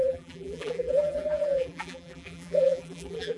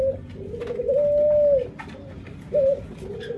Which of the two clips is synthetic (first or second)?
first